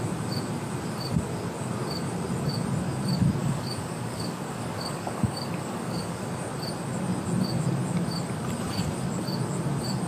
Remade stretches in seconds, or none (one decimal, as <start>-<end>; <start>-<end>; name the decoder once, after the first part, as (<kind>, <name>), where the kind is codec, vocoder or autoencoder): 3.4-6.3 (codec, DAC)